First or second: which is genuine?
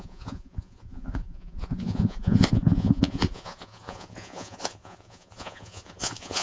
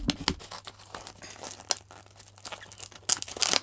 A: second